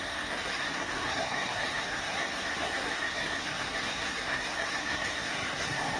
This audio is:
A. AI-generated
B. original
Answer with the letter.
A